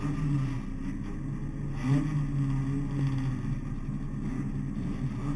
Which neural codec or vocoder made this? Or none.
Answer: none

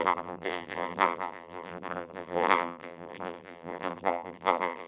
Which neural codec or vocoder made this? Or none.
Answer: vocoder, BigVGAN v2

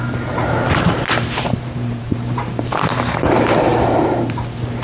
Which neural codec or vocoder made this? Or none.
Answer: vocoder, BigVGAN v2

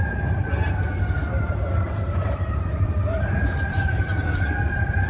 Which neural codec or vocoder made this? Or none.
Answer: vocoder, BigVGAN v2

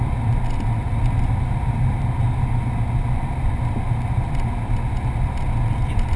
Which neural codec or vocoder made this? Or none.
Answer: none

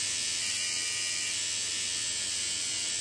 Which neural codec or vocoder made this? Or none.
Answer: vocoder, BigVGAN v2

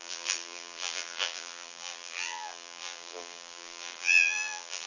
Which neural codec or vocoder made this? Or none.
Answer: vocoder, BigVGAN v2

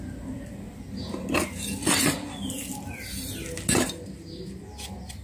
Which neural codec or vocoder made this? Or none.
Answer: none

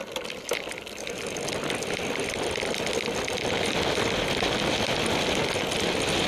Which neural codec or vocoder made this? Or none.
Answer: none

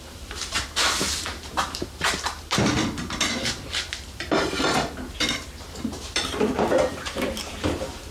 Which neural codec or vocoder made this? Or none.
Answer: vocoder, BigVGAN v2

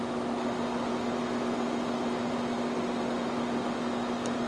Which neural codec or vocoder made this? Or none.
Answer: none